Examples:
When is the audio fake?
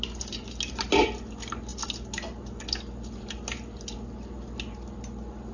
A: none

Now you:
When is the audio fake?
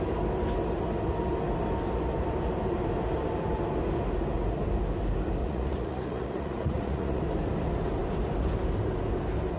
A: 5.4-7.2